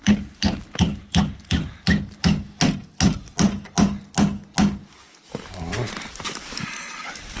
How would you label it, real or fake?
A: real